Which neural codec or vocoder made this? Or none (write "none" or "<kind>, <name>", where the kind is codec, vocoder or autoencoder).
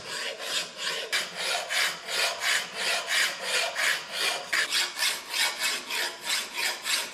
none